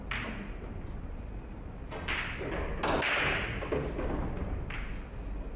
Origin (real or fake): real